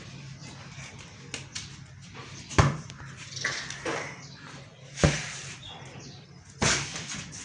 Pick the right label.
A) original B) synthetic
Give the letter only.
A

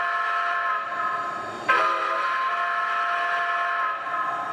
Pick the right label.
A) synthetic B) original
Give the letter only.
B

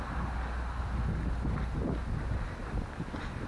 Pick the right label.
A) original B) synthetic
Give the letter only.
A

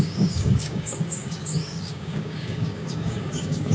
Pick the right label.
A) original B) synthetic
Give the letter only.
B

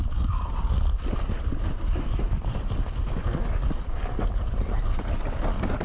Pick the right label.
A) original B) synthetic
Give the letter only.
A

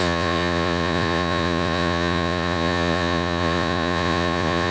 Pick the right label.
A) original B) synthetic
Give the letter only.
B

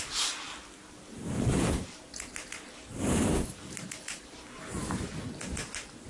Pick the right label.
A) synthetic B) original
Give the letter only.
B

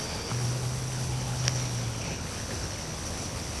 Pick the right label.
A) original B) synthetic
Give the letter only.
B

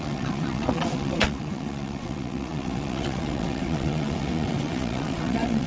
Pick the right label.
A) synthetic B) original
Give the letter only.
A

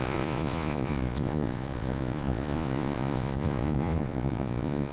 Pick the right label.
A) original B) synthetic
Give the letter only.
B